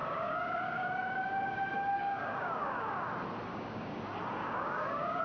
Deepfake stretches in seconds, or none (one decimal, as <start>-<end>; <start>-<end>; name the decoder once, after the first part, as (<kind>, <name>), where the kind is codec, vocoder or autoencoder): 0.0-3.1 (codec, DAC); 3.5-4.0; 4.4-5.2